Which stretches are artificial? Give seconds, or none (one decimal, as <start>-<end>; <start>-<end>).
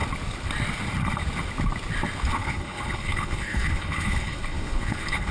2.3-5.3